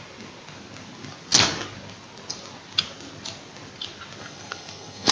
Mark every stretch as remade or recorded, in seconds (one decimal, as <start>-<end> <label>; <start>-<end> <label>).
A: 0.0-4.2 recorded; 4.2-5.1 remade